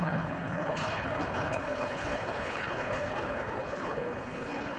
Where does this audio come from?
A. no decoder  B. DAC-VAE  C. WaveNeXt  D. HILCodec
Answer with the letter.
D